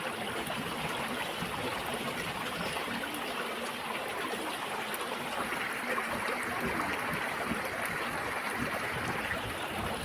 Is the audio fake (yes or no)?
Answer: no